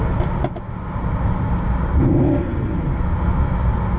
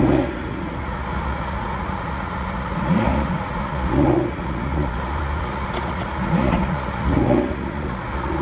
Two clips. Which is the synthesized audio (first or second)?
second